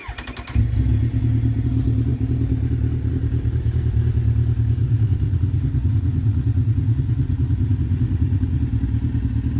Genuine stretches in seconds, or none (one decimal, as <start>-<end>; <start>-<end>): 0.0-4.8; 8.6-9.6

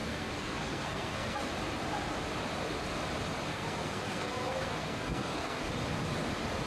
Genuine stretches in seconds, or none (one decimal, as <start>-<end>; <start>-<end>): 1.5-3.5; 5.7-6.7

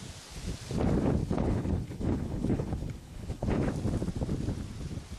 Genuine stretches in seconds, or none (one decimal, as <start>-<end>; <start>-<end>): 0.0-1.2; 3.7-5.2

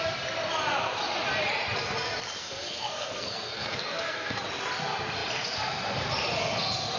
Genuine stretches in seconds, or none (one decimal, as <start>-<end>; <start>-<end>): 0.0-2.4; 4.4-7.0